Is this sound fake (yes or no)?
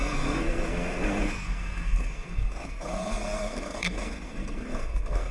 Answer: yes